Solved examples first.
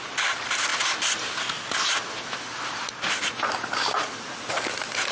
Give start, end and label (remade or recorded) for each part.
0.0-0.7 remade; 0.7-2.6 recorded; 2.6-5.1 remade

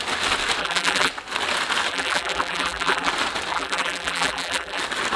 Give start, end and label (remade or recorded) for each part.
0.0-0.6 recorded; 0.6-1.1 remade; 1.1-1.9 recorded; 1.9-3.1 remade; 3.1-3.5 recorded; 3.5-4.8 remade; 4.8-5.2 recorded

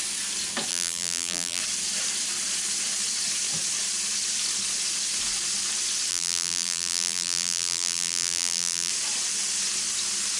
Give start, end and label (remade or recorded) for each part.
0.0-0.7 recorded; 0.7-1.6 remade; 1.6-6.1 recorded; 6.1-8.9 remade; 8.9-10.4 recorded

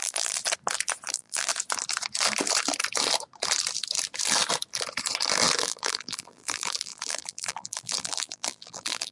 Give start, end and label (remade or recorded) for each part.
0.0-0.4 remade; 0.4-1.1 recorded; 1.1-1.5 remade; 1.5-5.6 recorded; 5.6-9.1 remade

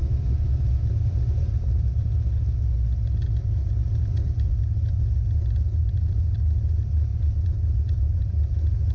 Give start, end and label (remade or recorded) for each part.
0.0-2.0 remade; 2.0-3.6 recorded; 3.6-4.5 remade; 4.5-5.8 recorded; 5.8-8.9 remade

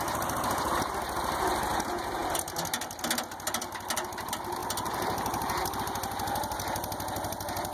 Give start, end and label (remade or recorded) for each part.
0.0-7.7 recorded

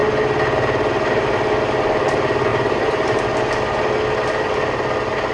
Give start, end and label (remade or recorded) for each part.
0.0-2.5 recorded; 2.5-3.2 remade; 3.2-5.3 recorded

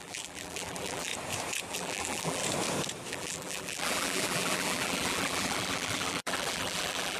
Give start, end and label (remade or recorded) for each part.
0.0-1.1 remade; 1.1-1.7 recorded; 1.7-2.4 remade; 2.4-3.1 recorded; 3.1-7.2 remade